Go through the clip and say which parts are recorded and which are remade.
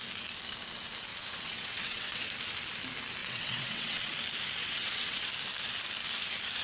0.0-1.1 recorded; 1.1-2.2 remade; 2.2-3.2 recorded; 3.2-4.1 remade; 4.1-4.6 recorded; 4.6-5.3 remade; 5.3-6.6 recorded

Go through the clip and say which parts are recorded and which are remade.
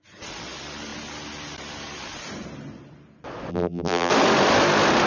0.0-3.5 recorded; 3.5-4.1 remade; 4.1-5.1 recorded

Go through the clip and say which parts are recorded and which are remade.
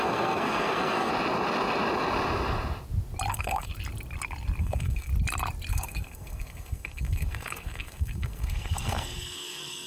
0.0-1.1 remade; 1.1-3.3 recorded; 3.3-3.7 remade; 3.7-4.6 recorded; 4.6-5.1 remade; 5.1-5.7 recorded; 5.7-9.9 remade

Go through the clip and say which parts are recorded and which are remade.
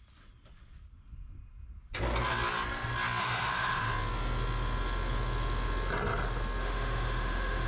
0.0-3.2 recorded; 3.2-3.9 remade; 3.9-6.6 recorded; 6.6-7.7 remade